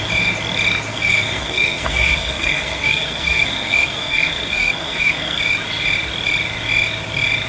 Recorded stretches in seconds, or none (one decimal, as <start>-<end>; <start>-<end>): 0.0-0.9; 5.4-7.5